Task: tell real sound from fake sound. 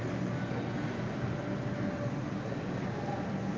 real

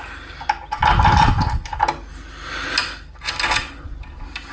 real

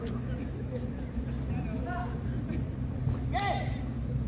real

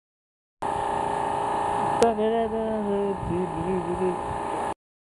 real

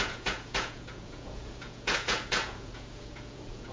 fake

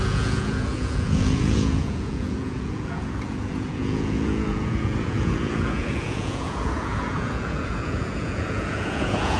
fake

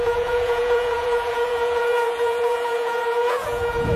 fake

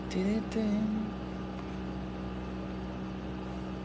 real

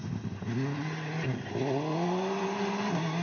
real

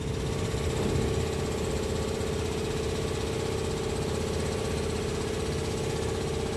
real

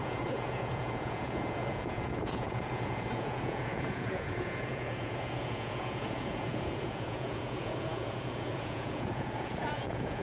fake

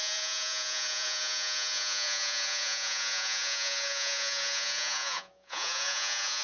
fake